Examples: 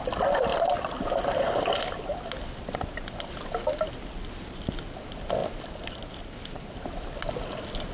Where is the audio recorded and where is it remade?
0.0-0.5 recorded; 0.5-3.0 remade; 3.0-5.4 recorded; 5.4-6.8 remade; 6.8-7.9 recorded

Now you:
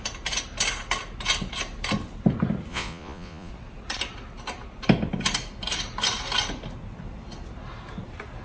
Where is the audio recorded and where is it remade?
0.0-2.7 recorded; 2.7-3.5 remade; 3.5-8.4 recorded

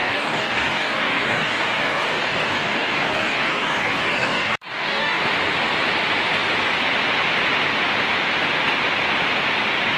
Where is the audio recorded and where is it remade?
0.0-5.2 remade; 5.2-10.0 recorded

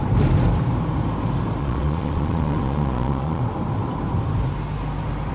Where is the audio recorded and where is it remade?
0.0-1.6 recorded; 1.6-3.4 remade; 3.4-5.3 recorded